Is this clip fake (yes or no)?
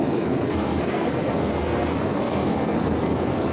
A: yes